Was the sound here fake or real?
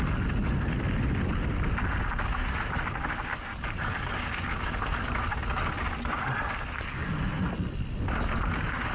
real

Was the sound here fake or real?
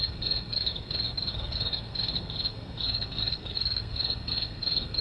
fake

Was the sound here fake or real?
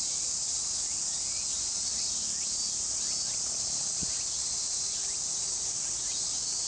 real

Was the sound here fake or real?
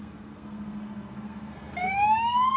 fake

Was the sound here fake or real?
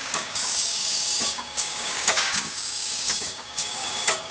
fake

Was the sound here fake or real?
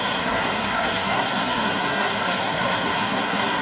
fake